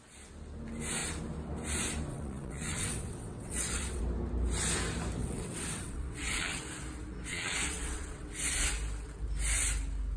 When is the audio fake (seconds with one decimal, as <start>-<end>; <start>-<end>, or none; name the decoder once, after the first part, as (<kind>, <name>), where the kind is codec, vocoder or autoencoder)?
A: 2.1-4.0 (vocoder, WaveNeXt); 5.2-6.6; 7.3-8.3